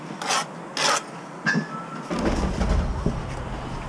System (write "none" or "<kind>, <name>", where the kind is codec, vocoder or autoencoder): none